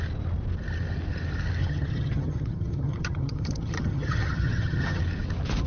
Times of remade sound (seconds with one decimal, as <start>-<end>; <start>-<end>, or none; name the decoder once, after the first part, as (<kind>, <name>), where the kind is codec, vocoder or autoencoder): 1.6-5.0 (vocoder, HiFi-GAN)